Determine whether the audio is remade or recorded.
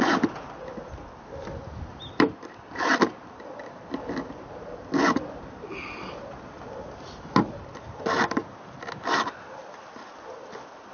recorded